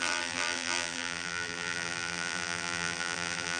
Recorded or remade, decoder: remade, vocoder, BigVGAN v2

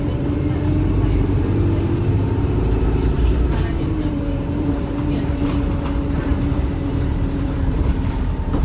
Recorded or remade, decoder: remade, vocoder, BigVGAN v2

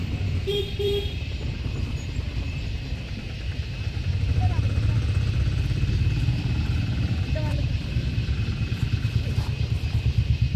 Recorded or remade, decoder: remade, vocoder, BigVGAN v2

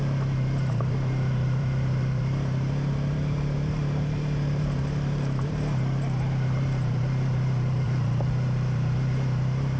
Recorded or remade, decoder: remade, vocoder, BigVGAN v2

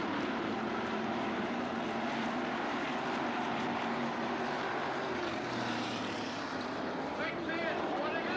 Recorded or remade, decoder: remade, vocoder, BigVGAN v2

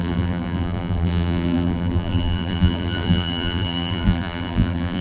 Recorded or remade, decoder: remade, vocoder, BigVGAN v2